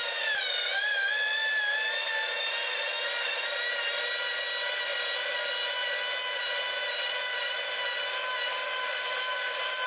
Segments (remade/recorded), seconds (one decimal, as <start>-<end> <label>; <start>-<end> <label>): 0.0-9.9 recorded